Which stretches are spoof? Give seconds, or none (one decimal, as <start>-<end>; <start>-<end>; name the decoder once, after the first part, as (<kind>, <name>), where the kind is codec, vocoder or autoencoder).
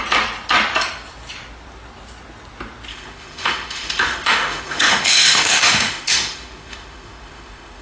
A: 2.9-7.8 (autoencoder, DAC-VAE)